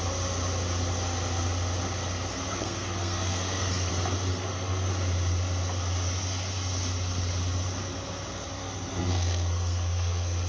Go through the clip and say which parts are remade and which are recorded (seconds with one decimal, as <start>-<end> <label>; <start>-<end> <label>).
0.0-2.3 recorded; 2.3-3.9 remade; 3.9-4.3 recorded; 4.3-4.9 remade; 4.9-8.6 recorded; 8.6-10.5 remade